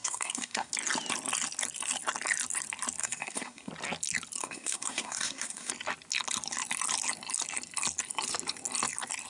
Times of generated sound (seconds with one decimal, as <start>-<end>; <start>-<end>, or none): 0.0-0.7; 3.0-3.7; 4.4-5.7